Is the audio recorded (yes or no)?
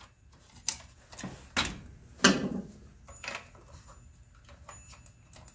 yes